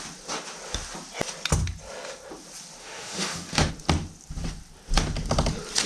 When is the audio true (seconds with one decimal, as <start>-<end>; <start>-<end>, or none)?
0.0-2.8; 3.7-5.9